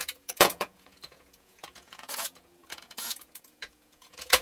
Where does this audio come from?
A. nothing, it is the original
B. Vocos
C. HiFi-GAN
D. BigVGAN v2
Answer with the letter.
B